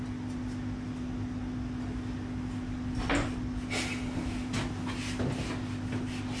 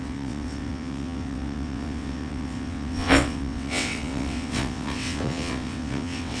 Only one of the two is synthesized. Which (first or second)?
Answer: second